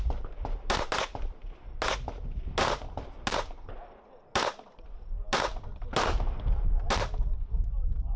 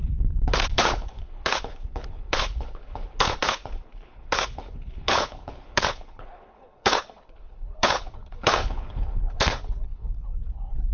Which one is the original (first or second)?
first